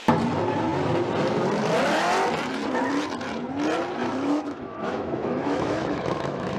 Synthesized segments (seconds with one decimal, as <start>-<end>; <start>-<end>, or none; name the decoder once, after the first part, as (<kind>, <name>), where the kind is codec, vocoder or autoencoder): 4.0-6.6 (autoencoder, DAC-VAE)